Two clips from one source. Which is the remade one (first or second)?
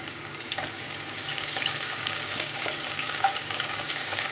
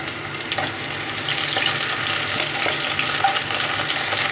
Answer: first